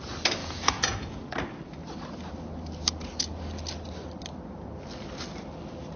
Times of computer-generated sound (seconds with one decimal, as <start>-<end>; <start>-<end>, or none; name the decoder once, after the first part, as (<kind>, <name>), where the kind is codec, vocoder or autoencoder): 0.4-1.2 (vocoder, Vocos)